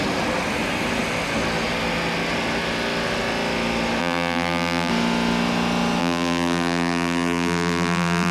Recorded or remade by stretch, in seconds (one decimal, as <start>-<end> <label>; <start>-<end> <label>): 0.0-4.0 recorded; 4.0-4.9 remade; 4.9-6.0 recorded; 6.0-8.3 remade